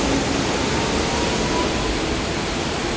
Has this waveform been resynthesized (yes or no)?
no